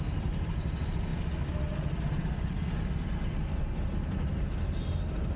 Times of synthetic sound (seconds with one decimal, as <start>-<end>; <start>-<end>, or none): none